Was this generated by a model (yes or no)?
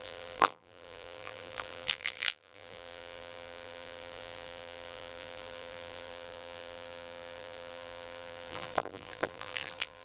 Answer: yes